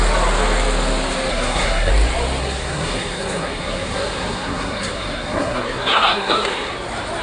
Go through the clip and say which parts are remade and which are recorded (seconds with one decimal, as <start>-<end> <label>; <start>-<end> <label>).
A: 0.0-1.3 recorded; 1.3-1.9 remade; 1.9-2.4 recorded; 2.4-6.7 remade; 6.7-7.2 recorded